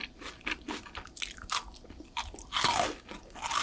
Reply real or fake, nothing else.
real